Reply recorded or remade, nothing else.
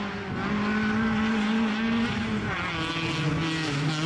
recorded